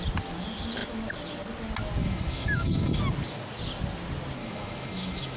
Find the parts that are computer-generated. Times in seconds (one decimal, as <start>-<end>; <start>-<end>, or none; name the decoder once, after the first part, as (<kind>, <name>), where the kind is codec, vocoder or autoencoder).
2.0-3.0 (autoencoder, DAC-VAE); 4.4-5.4